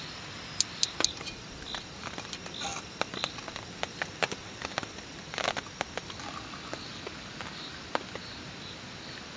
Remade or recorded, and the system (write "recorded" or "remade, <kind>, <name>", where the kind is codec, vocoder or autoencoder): recorded